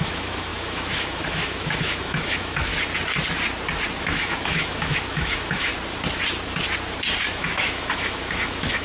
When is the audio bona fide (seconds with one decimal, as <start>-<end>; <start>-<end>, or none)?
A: 2.7-4.0; 5.7-7.2